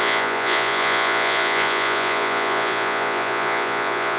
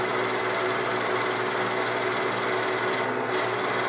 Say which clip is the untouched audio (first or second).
second